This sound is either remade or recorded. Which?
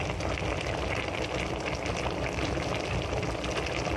recorded